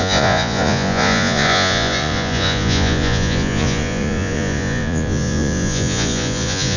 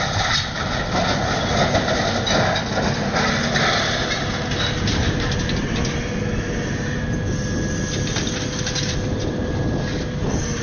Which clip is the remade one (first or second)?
first